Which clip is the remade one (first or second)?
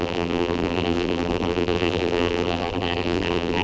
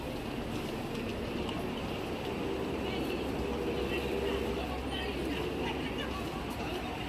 first